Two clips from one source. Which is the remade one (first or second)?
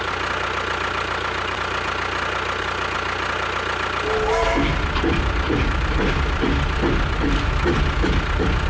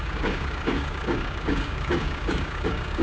second